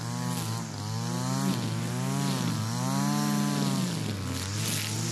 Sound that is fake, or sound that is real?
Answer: real